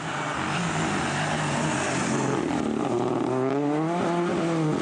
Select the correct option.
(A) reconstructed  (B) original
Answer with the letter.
B